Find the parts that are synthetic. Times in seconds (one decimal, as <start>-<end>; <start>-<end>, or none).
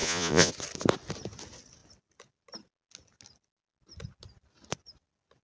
0.0-0.5